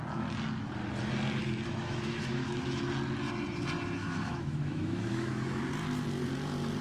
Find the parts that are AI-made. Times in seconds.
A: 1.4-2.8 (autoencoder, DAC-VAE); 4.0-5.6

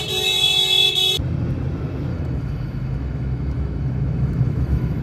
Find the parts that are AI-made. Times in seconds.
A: 2.1-5.0 (autoencoder, DAC-VAE)

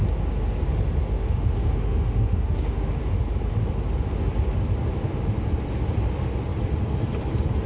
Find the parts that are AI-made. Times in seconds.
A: 1.1-2.9 (autoencoder, DAC-VAE)

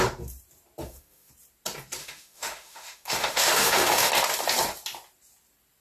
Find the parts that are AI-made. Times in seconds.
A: 0.8-1.3 (autoencoder, DAC-VAE); 2.0-4.1

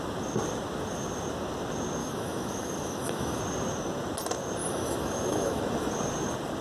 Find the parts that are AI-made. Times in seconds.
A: 2.0-3.4 (autoencoder, DAC-VAE); 4.6-5.6

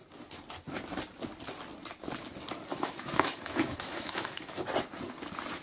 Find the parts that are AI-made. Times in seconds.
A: 2.7-4.6 (autoencoder, DAC-VAE)

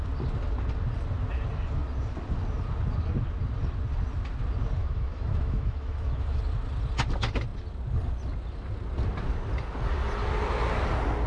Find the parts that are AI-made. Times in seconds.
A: 4.8-6.4 (autoencoder, DAC-VAE)

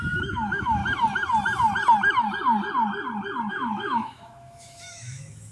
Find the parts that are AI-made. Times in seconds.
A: 0.0-0.8 (autoencoder, DAC-VAE); 3.5-5.5